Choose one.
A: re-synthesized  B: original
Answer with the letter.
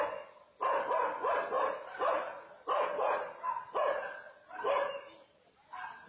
B